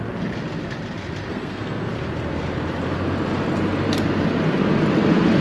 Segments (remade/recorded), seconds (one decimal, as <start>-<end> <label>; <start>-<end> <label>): 0.0-1.3 recorded; 1.3-1.9 remade; 1.9-5.4 recorded

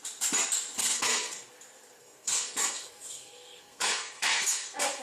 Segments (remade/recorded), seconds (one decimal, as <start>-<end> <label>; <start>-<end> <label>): 0.0-0.8 recorded; 0.8-1.5 remade; 1.5-2.0 recorded; 2.0-5.0 remade

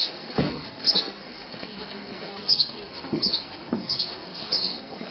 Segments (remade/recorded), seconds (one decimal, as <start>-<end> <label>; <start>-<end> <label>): 0.0-5.1 remade

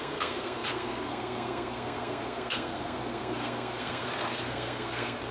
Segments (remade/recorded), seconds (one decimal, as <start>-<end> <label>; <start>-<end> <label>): 0.0-5.3 remade

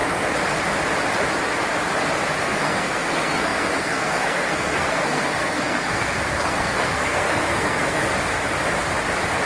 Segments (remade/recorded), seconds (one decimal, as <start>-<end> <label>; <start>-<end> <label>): 0.0-2.4 recorded; 2.4-8.1 remade; 8.1-9.5 recorded

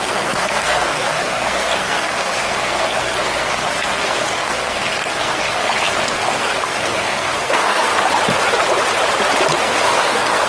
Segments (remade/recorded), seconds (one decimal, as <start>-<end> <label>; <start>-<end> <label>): 0.0-7.9 remade; 7.9-9.6 recorded; 9.6-10.5 remade

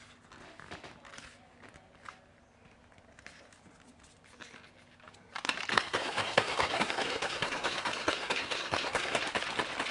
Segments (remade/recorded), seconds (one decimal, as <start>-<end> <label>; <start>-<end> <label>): 0.0-5.7 recorded; 5.7-9.2 remade; 9.2-9.9 recorded

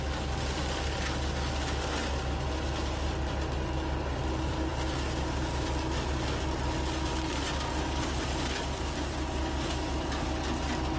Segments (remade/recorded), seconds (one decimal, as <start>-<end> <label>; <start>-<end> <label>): 0.0-11.0 recorded